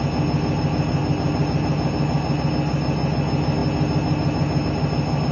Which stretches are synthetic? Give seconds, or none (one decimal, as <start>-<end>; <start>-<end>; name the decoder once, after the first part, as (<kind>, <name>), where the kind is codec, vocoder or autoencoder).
none